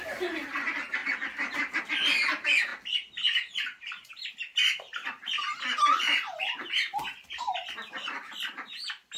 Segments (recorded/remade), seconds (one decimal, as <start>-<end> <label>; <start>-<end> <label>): 0.0-1.0 remade; 1.0-1.8 recorded; 1.8-2.7 remade; 2.7-4.1 recorded; 4.1-4.5 remade; 4.5-8.1 recorded; 8.1-9.2 remade